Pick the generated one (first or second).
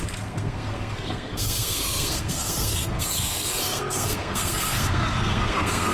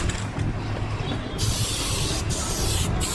first